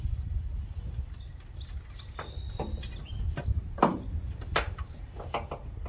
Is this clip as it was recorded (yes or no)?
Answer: no